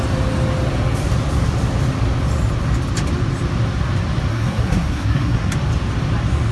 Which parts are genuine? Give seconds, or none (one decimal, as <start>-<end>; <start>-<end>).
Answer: 0.0-4.3; 5.5-6.5